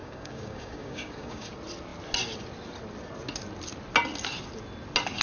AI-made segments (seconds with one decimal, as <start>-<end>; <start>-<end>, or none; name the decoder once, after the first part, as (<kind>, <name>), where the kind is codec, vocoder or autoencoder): 0.0-1.5 (codec, DAC)

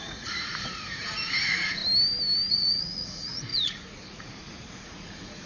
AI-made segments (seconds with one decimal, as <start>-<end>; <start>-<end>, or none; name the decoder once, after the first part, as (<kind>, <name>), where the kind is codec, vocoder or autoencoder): 0.0-1.8 (vocoder, Vocos); 2.5-5.5

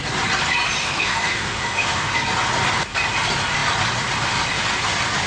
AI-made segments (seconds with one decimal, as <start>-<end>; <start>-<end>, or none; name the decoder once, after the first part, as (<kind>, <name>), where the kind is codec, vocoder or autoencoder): 0.8-2.1 (autoencoder, DAC-VAE)

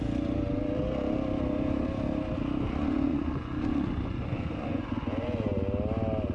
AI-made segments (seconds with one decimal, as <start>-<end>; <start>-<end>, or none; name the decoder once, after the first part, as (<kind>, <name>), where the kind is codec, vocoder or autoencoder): 2.8-5.6 (vocoder, Vocos)